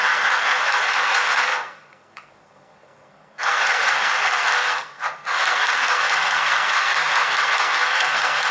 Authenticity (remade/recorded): remade